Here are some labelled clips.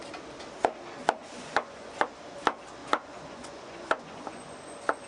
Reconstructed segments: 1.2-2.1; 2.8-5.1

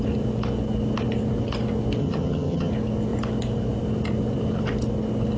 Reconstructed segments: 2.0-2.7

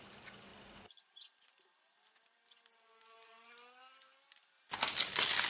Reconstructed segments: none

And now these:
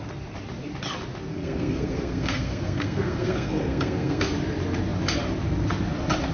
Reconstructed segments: 1.3-4.3

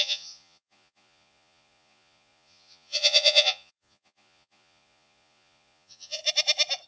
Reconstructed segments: 0.0-6.2

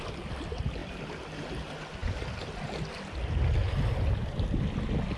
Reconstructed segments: none

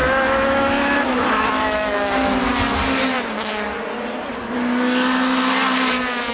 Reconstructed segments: 0.0-2.2

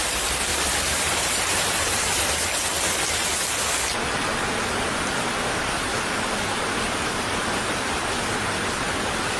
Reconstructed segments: 0.5-2.3; 5.9-8.0